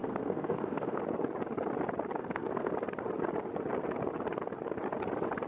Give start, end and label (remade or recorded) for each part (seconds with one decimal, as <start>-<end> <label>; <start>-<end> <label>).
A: 0.0-1.0 remade; 1.0-2.2 recorded; 2.2-2.7 remade; 2.7-5.5 recorded